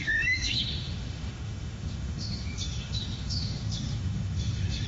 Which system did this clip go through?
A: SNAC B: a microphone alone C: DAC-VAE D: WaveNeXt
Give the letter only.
C